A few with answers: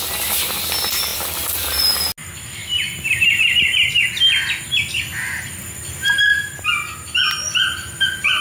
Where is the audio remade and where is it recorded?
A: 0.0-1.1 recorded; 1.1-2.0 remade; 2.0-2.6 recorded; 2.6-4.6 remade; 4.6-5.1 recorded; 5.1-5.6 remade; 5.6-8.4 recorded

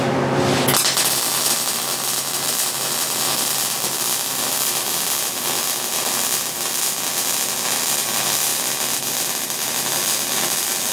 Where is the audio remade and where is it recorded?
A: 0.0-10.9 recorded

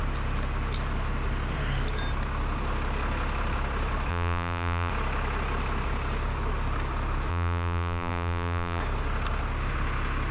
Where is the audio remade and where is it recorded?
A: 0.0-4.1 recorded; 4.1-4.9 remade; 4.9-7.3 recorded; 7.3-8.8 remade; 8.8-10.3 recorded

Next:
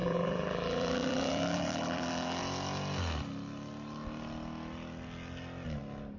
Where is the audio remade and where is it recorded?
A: 0.0-2.4 remade; 2.4-6.2 recorded